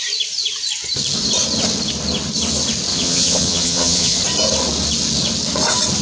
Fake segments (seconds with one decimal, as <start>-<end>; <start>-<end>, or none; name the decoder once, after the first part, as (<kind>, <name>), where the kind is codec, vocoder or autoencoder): 2.9-4.2 (vocoder, Vocos)